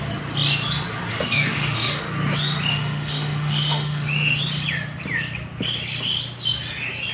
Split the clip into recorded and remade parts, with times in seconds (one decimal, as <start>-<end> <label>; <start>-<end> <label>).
0.0-1.1 recorded; 1.1-2.0 remade; 2.0-2.7 recorded; 2.7-4.4 remade; 4.4-7.1 recorded